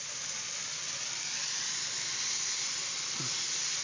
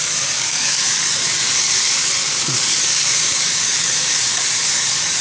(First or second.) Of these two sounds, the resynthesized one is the second